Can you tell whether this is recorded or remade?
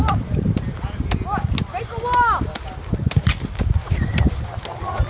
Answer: recorded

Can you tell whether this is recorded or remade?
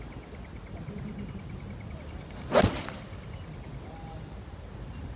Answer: recorded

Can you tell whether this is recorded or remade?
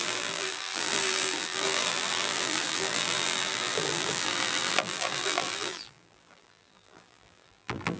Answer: remade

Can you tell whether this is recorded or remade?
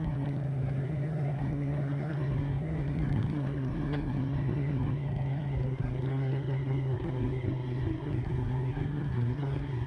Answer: remade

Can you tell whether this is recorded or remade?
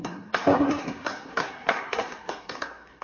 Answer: remade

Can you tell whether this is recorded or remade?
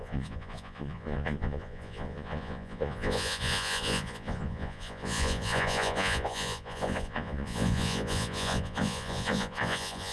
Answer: remade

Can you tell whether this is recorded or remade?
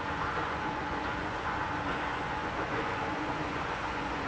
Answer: remade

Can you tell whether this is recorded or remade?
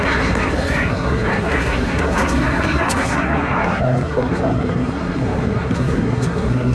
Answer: remade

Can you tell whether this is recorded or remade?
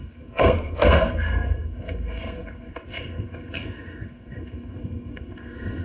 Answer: remade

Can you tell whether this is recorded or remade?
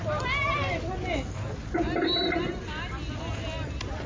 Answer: recorded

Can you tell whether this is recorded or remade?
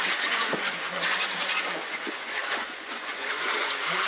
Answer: remade